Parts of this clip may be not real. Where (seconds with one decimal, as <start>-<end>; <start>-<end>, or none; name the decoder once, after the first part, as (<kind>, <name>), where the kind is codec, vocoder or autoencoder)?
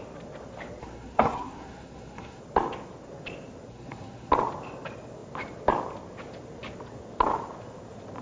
0.8-2.4 (codec, SNAC); 3.7-4.3